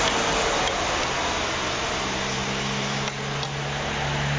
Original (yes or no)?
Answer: yes